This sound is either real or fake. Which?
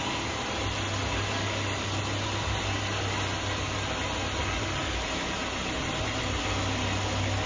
real